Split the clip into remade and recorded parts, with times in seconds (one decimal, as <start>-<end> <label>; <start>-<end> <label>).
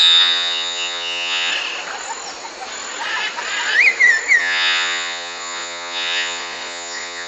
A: 0.0-1.5 remade; 1.5-4.4 recorded; 4.4-7.3 remade